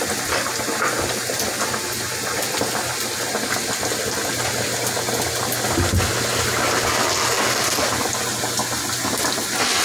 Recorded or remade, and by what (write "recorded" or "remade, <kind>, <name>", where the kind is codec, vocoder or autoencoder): recorded